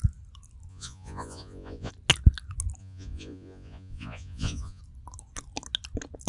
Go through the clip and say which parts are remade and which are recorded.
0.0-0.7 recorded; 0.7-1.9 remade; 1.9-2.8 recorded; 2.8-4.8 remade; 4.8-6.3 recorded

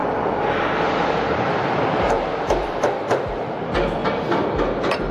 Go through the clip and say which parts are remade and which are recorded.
0.0-4.0 remade; 4.0-4.6 recorded; 4.6-5.1 remade

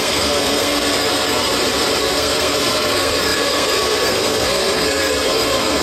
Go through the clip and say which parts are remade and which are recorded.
0.0-1.5 remade; 1.5-2.0 recorded; 2.0-5.8 remade

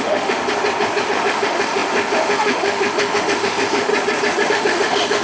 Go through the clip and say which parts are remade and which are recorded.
0.0-0.4 remade; 0.4-1.1 recorded; 1.1-3.9 remade; 3.9-4.5 recorded; 4.5-5.2 remade

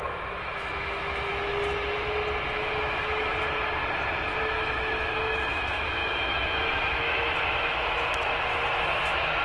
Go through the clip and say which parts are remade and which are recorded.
0.0-1.3 remade; 1.3-2.5 recorded; 2.5-3.3 remade; 3.3-4.4 recorded; 4.4-9.4 remade